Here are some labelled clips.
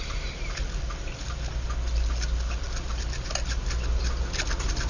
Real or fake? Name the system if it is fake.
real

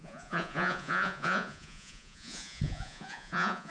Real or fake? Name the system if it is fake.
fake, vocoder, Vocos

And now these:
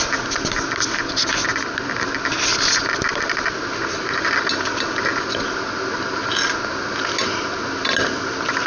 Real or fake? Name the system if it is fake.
real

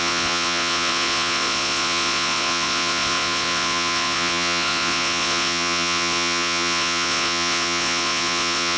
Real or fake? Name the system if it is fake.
fake, vocoder, Vocos